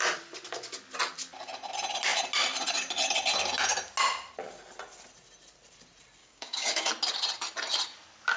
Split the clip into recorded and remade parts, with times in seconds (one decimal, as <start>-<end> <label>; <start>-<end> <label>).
0.0-6.2 recorded; 6.2-6.9 remade; 6.9-8.4 recorded